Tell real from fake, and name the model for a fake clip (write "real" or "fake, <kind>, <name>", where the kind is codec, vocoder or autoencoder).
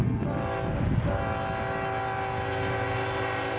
real